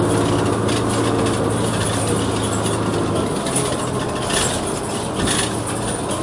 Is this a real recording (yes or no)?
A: yes